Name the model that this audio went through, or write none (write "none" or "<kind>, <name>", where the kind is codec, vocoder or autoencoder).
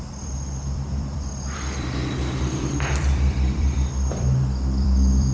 vocoder, BigVGAN v2